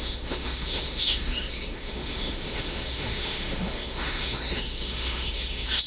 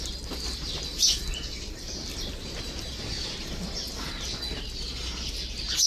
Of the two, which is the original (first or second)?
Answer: second